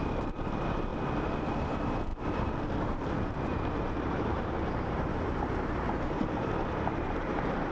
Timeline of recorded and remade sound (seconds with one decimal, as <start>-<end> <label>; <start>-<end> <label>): 0.0-0.9 remade; 0.9-1.4 recorded; 1.4-2.1 remade; 2.1-2.8 recorded; 2.8-7.7 remade